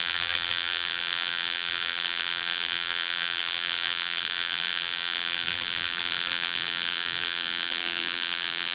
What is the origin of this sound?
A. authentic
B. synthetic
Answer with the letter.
B